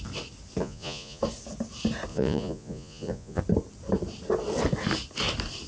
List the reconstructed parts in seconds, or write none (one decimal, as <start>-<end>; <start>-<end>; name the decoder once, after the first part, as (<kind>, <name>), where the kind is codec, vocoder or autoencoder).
0.6-1.2 (vocoder, Vocos); 2.1-3.4